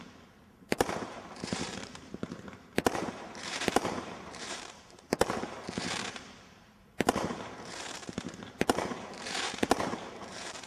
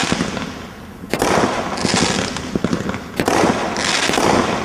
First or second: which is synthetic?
first